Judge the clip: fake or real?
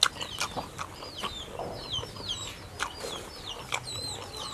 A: real